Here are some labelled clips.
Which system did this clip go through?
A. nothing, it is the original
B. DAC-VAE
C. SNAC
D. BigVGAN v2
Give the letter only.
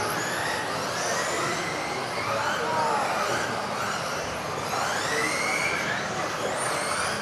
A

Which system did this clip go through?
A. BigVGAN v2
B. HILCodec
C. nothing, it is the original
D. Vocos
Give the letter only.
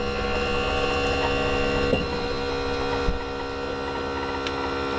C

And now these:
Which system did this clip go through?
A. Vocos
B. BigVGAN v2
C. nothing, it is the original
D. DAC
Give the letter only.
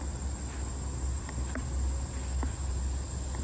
C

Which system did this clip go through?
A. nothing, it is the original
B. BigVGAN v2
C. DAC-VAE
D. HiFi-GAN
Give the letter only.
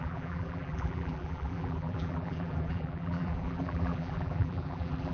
B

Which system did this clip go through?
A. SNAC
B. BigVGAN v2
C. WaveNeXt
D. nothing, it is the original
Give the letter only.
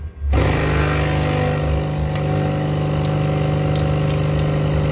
D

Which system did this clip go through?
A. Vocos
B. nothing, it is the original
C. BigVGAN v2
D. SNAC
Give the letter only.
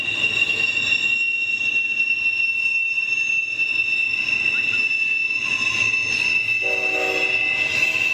B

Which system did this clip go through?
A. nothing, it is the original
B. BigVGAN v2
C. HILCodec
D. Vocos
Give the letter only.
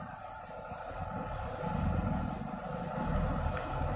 A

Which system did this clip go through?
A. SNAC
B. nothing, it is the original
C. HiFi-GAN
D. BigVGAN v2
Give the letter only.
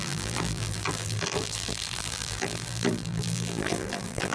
D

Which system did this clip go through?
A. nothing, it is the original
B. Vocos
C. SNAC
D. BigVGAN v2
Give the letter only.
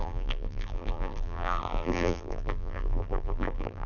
D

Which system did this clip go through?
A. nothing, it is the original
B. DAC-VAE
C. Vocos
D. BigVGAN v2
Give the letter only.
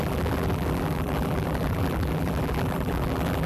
D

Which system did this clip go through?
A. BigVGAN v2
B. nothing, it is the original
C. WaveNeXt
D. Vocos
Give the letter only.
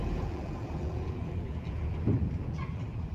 A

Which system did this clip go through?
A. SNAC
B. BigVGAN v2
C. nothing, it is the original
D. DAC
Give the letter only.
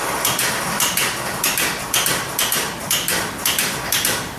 C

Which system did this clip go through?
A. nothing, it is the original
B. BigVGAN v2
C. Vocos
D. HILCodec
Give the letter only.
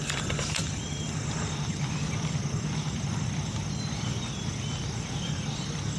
B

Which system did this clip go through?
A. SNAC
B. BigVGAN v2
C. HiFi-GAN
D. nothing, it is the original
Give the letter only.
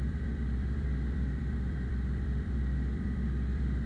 B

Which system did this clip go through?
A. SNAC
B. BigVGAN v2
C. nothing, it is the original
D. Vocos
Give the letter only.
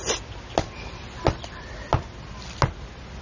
C